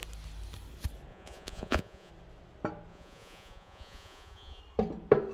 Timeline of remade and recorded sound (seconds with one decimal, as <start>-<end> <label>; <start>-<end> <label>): 0.0-1.1 recorded; 1.1-2.1 remade; 2.1-2.9 recorded; 2.9-4.6 remade; 4.6-5.3 recorded